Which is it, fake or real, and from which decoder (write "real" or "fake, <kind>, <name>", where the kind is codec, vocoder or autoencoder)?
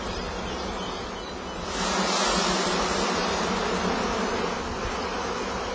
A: real